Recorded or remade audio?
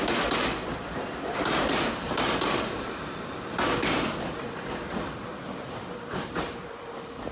recorded